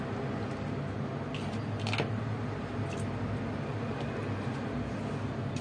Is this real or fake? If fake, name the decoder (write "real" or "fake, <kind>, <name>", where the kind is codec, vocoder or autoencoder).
real